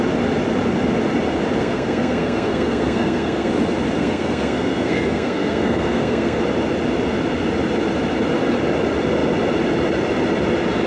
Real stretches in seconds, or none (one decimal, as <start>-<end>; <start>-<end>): 0.0-1.6; 3.5-4.0; 6.4-10.9